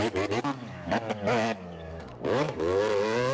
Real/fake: fake